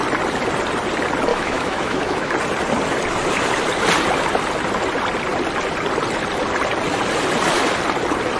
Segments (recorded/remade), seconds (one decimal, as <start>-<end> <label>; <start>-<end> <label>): 0.0-1.3 recorded; 1.3-2.3 remade; 2.3-8.4 recorded